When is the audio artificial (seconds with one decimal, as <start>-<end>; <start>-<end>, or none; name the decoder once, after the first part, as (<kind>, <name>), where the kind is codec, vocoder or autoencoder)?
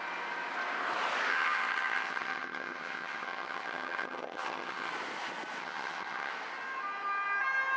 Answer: 1.3-4.9 (vocoder, HiFi-GAN); 5.6-6.3